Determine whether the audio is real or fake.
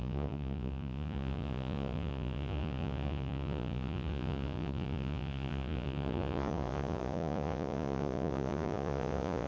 fake